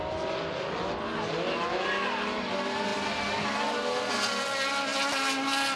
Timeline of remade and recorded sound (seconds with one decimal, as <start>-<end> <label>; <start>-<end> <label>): 0.0-5.8 recorded